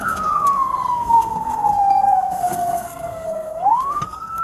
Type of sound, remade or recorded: remade